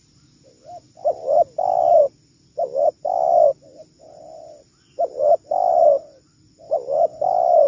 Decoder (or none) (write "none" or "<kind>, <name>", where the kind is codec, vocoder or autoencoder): none